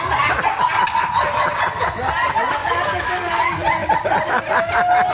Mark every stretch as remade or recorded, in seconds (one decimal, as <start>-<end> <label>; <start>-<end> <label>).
0.0-2.6 recorded; 2.6-3.3 remade; 3.3-5.1 recorded